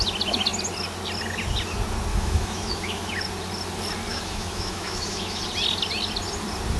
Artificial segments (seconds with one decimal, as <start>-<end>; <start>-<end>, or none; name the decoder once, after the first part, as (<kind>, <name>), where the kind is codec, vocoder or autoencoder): 2.1-3.1 (autoencoder, DAC-VAE); 4.1-5.4